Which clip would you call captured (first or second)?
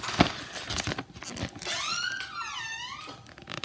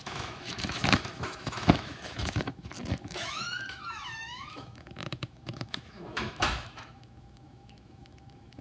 first